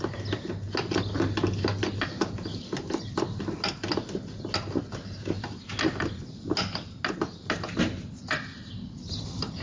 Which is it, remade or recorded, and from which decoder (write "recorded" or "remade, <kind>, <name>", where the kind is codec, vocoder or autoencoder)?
recorded